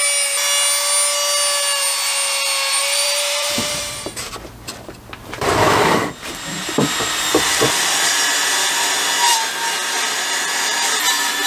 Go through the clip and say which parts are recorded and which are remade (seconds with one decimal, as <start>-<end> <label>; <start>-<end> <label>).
0.0-2.8 recorded; 2.8-4.2 remade; 4.2-11.5 recorded